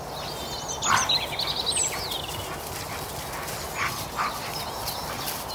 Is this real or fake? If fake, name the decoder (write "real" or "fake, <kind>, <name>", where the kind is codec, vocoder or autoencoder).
real